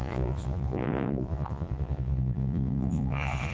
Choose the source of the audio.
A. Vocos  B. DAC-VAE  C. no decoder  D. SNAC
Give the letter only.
A